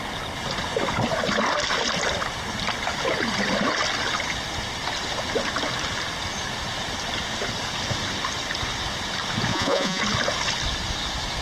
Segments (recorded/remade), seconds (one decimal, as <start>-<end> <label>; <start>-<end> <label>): 0.0-9.5 recorded; 9.5-10.0 remade; 10.0-11.4 recorded